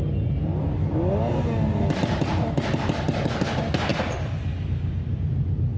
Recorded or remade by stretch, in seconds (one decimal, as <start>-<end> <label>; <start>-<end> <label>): 0.0-5.8 recorded